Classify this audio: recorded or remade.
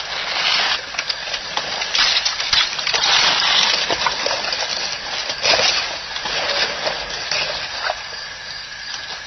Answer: recorded